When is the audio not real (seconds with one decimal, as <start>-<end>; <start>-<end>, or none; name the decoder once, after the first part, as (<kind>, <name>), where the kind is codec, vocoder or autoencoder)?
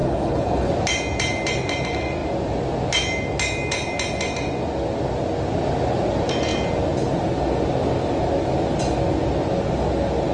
0.0-0.7 (codec, HILCodec)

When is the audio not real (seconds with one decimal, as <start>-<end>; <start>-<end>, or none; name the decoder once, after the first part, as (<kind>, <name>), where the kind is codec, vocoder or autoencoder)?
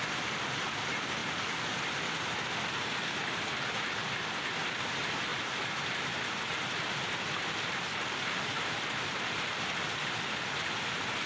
5.3-9.2 (vocoder, BigVGAN v2)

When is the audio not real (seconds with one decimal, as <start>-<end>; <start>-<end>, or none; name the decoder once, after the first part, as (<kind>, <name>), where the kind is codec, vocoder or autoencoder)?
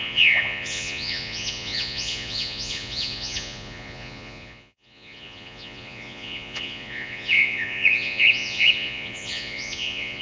0.0-10.2 (vocoder, Vocos)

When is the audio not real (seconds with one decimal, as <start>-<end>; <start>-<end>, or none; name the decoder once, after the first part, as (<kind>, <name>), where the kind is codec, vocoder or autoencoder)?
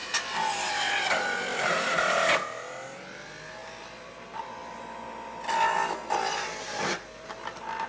none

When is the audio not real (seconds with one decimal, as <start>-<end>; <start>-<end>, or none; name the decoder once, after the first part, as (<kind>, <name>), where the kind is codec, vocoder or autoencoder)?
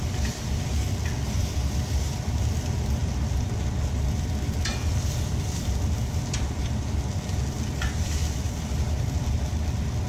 none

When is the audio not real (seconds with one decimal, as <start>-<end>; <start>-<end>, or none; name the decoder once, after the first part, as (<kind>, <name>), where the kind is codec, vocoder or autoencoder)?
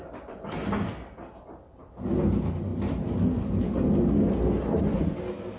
none